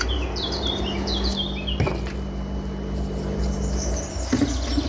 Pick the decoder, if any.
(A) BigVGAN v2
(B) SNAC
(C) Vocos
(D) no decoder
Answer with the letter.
D